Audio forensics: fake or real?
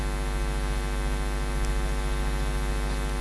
real